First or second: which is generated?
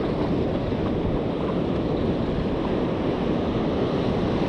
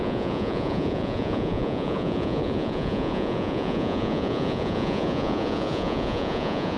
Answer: second